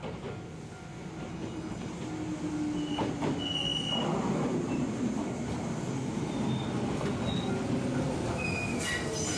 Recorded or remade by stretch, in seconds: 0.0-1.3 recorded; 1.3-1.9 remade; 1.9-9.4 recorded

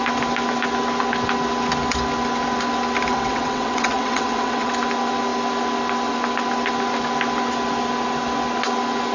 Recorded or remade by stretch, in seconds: 0.0-3.1 recorded; 3.1-4.7 remade; 4.7-9.1 recorded